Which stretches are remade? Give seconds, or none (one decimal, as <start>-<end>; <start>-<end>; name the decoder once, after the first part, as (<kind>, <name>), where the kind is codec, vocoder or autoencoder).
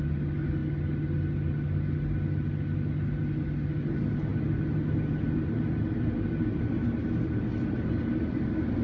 none